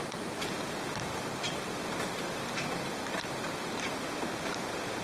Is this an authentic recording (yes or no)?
yes